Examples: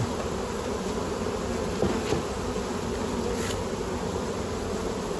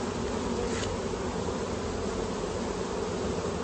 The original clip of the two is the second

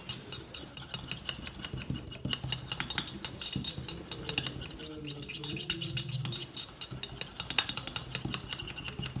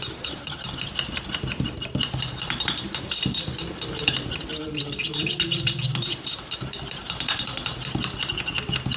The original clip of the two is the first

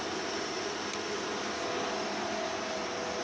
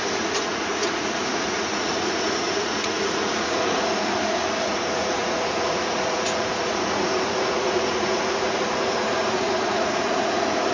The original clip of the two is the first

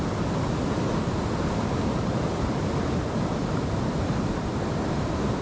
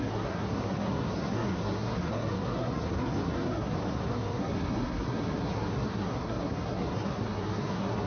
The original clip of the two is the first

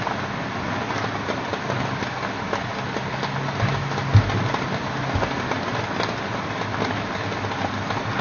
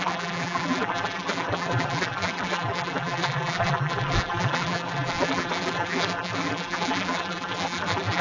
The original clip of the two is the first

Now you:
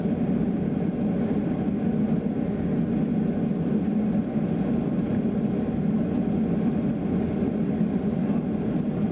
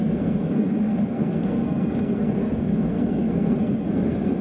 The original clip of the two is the first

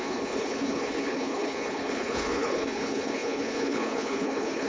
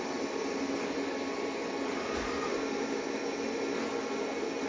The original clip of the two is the second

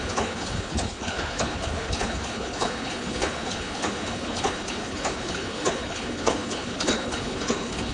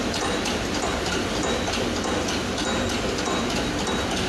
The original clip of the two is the second